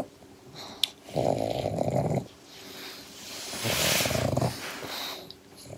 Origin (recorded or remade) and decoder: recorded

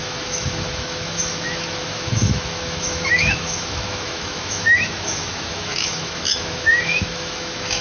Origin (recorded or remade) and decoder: remade, autoencoder, DAC-VAE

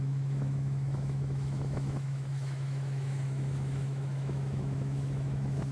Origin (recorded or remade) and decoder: remade, autoencoder, DAC-VAE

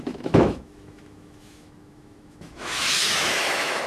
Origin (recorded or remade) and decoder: remade, autoencoder, DAC-VAE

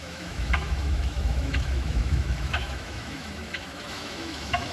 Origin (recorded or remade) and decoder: remade, autoencoder, DAC-VAE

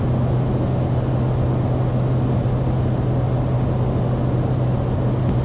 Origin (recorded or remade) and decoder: recorded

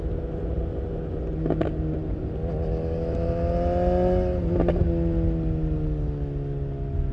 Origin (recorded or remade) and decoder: recorded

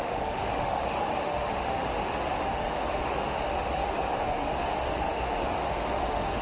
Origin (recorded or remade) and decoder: remade, autoencoder, DAC-VAE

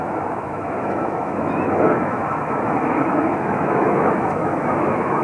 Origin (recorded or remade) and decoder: remade, autoencoder, DAC-VAE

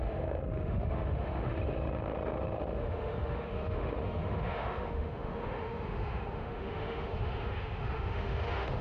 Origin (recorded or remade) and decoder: remade, autoencoder, DAC-VAE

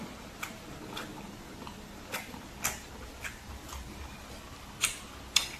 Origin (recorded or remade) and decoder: recorded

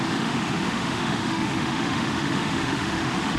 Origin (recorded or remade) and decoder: remade, autoencoder, DAC-VAE